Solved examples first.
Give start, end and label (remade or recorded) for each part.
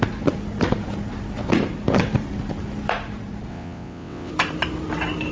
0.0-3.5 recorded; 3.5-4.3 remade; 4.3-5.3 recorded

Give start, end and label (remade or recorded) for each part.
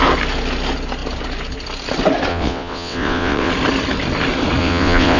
0.0-2.3 recorded; 2.3-3.5 remade; 3.5-4.6 recorded; 4.6-5.2 remade